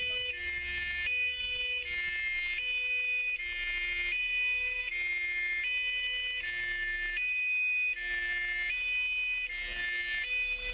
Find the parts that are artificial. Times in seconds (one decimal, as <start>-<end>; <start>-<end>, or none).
none